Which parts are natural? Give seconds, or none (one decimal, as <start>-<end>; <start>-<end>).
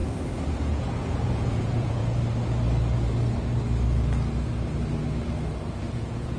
0.0-0.6; 2.0-5.8